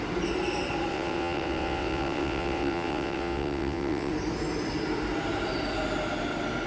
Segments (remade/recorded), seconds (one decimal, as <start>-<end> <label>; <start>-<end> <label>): 0.0-0.9 recorded; 0.9-4.1 remade; 4.1-6.7 recorded